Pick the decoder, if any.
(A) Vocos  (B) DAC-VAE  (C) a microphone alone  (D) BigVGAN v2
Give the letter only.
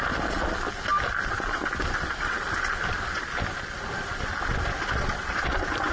C